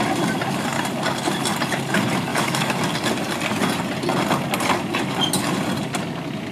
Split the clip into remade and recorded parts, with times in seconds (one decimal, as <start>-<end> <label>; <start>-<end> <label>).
0.0-2.3 recorded; 2.3-2.8 remade; 2.8-6.5 recorded